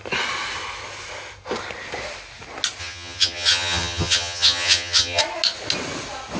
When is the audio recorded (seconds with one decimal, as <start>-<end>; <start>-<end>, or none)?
0.0-2.8; 5.2-6.4